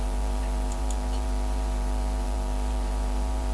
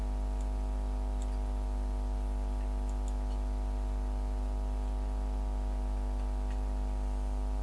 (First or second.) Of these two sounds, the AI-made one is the first